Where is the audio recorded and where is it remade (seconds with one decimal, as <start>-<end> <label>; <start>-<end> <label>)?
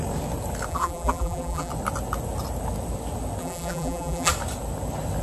0.0-0.7 recorded; 0.7-1.7 remade; 1.7-3.4 recorded; 3.4-4.3 remade; 4.3-5.2 recorded